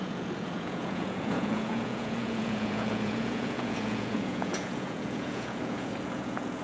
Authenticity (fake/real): fake